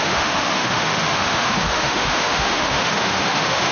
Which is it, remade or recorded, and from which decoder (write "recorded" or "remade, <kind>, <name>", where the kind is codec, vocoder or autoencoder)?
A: remade, autoencoder, DAC-VAE